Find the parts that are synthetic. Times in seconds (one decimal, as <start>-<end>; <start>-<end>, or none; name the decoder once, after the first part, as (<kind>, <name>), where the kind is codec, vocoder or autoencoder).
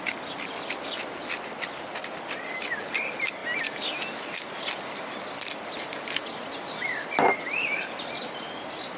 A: none